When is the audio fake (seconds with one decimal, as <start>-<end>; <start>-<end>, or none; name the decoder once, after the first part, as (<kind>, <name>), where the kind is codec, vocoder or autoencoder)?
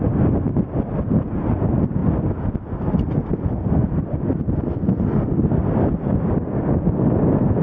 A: none